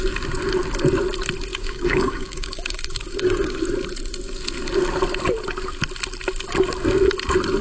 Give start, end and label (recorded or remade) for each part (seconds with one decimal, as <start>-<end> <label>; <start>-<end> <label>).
0.0-1.5 recorded; 1.5-3.6 remade; 3.6-7.6 recorded